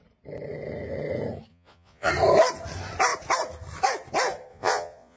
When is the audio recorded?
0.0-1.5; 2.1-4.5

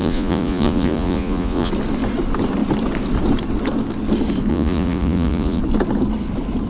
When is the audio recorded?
1.7-4.5; 5.6-6.7

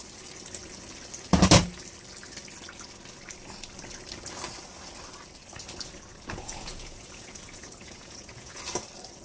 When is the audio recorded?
0.0-6.1; 8.6-9.2

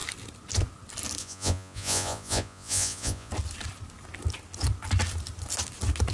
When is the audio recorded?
0.0-1.2; 3.3-6.1

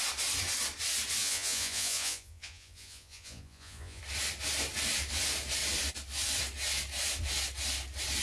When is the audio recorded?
0.0-1.2; 4.0-8.2

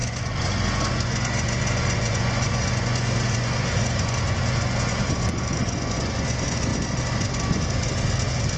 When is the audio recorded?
none